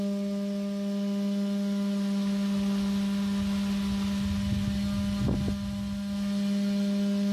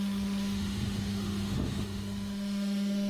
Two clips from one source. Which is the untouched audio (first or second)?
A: first